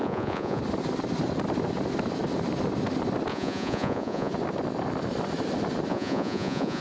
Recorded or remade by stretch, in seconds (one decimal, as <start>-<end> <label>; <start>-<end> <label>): 0.0-0.6 remade; 0.6-3.3 recorded; 3.3-4.3 remade; 4.3-5.9 recorded; 5.9-6.8 remade